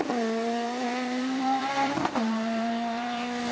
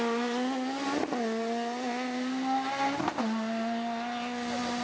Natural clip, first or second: second